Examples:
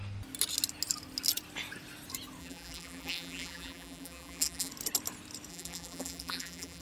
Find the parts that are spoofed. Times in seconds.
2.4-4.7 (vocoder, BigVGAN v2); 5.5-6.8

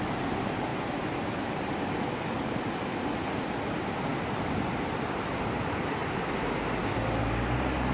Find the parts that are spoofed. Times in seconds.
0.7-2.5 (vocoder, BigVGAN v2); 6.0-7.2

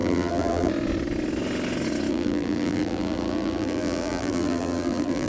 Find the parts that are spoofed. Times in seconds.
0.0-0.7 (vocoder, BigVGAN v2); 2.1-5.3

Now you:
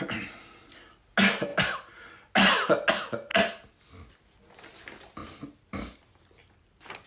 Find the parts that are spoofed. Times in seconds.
5.2-6.2 (vocoder, BigVGAN v2)